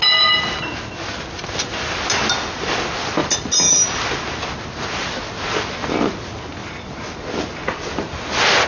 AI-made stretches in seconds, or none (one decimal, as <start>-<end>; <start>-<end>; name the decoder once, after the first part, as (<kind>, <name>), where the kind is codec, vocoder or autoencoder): none